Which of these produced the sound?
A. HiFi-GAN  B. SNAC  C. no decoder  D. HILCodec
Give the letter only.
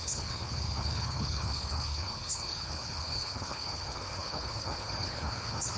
D